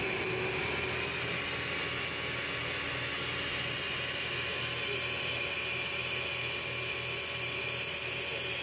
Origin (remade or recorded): recorded